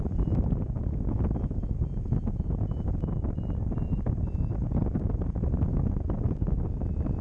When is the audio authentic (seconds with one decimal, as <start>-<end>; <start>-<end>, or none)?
0.0-7.2